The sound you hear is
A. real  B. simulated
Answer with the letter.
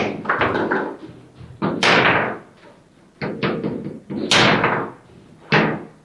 A